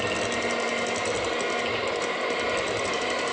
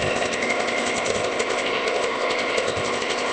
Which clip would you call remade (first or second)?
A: second